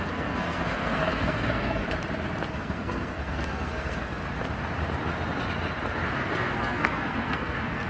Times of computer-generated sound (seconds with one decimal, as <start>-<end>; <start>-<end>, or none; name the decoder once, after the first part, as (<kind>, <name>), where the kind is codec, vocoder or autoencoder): 0.0-1.8 (codec, SNAC); 2.5-4.2; 6.3-7.9